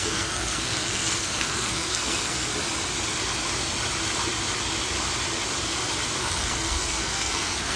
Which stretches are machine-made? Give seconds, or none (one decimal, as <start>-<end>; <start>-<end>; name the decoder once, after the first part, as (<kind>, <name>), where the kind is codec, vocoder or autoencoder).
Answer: 0.0-2.5 (codec, SNAC); 6.2-7.8